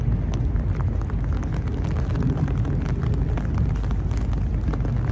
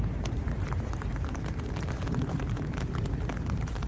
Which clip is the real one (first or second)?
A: first